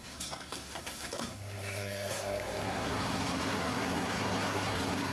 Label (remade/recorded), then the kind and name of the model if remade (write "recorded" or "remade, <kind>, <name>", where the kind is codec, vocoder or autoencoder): remade, codec, SNAC